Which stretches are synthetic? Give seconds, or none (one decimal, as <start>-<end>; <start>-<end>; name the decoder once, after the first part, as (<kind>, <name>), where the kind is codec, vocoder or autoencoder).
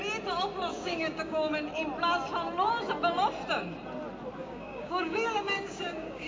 0.7-1.5 (codec, DAC); 4.4-6.3